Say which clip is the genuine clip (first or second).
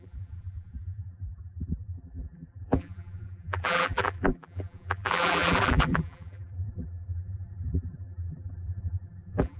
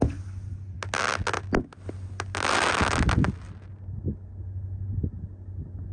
second